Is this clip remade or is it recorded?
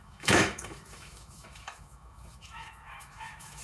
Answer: remade